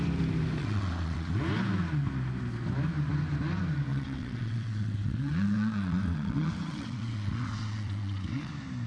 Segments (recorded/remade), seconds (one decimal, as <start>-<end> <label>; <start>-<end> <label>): 0.0-0.6 recorded; 0.6-1.4 remade; 1.4-3.9 recorded; 3.9-8.5 remade; 8.5-8.9 recorded